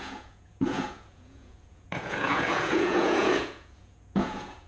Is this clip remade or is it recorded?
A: remade